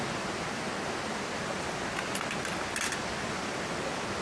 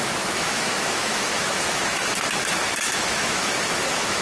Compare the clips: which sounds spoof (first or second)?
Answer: second